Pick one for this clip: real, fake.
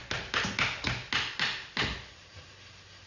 real